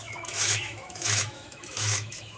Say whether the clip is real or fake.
fake